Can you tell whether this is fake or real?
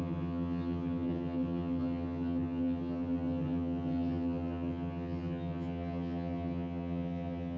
fake